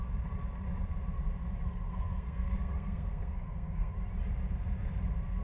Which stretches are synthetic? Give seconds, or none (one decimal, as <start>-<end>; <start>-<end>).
1.9-3.9